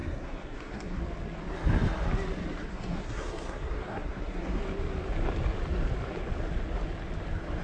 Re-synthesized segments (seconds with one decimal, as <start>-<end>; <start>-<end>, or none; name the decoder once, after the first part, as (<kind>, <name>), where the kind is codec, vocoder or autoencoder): 0.0-1.0 (codec, SNAC); 2.7-4.6